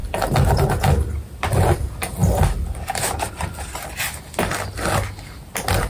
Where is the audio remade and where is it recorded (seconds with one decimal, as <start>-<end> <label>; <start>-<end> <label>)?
0.0-5.9 recorded